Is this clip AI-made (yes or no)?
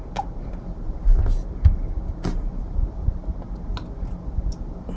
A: no